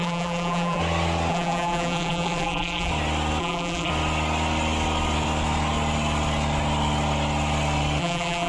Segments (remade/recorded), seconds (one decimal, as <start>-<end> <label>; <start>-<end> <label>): 0.0-0.8 remade; 0.8-1.3 recorded; 1.3-2.9 remade; 2.9-3.4 recorded; 3.4-3.9 remade; 3.9-8.0 recorded; 8.0-8.5 remade